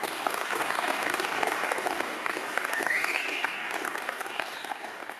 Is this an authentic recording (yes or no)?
no